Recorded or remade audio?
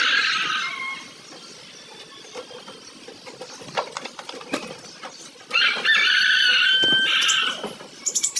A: recorded